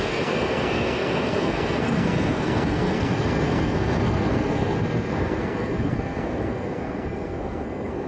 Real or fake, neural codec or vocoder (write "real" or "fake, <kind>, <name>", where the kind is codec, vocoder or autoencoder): fake, codec, SNAC